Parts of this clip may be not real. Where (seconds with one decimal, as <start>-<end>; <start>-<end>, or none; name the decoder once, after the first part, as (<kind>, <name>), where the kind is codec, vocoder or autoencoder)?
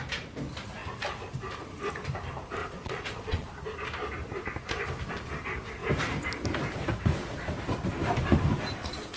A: 2.6-3.5 (vocoder, Vocos)